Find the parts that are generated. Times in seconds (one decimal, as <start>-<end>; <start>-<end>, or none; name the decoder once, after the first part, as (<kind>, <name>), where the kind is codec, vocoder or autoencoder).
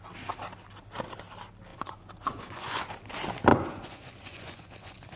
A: 1.7-2.8 (vocoder, Vocos); 3.5-5.2